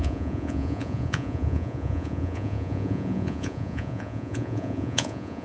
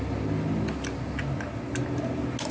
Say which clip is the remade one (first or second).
first